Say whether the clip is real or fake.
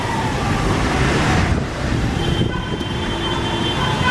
fake